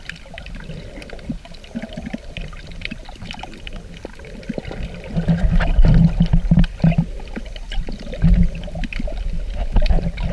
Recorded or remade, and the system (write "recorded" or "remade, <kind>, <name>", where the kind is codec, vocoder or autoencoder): recorded